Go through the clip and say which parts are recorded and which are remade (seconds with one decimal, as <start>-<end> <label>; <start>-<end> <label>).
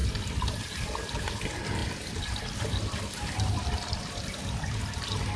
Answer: 0.0-1.1 remade; 1.1-1.8 recorded; 1.8-5.0 remade; 5.0-5.4 recorded